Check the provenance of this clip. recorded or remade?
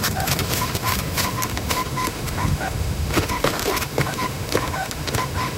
remade